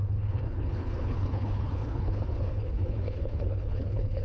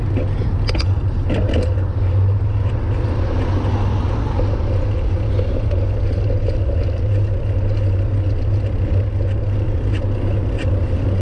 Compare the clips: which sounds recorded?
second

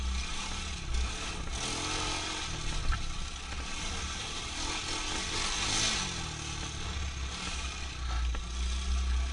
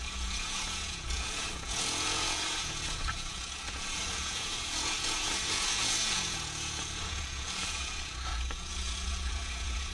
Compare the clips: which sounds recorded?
first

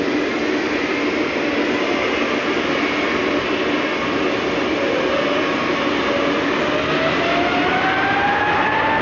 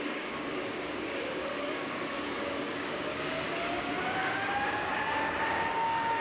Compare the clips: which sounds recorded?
first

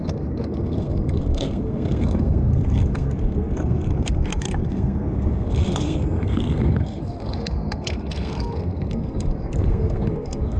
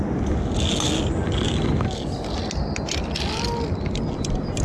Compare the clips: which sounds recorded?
second